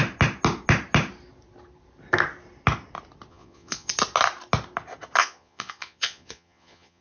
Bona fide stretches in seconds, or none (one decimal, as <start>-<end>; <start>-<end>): 0.0-3.3; 3.9-5.2